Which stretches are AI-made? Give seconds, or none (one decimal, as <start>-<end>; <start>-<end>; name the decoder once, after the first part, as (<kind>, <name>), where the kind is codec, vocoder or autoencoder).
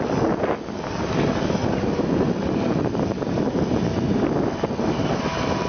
1.6-3.6 (vocoder, BigVGAN v2)